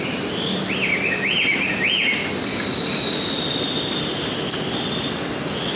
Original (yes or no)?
yes